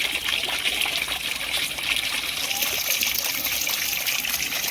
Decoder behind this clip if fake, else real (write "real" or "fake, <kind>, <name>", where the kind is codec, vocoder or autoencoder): real